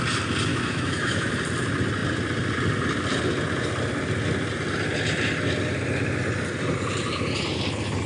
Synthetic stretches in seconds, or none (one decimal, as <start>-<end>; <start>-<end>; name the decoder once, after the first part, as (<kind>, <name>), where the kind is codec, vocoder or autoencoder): 0.5-1.3 (autoencoder, DAC-VAE)